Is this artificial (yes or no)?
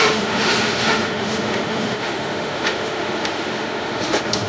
yes